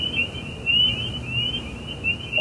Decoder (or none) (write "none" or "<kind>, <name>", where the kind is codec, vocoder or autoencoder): none